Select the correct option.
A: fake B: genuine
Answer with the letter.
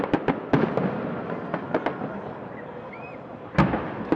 B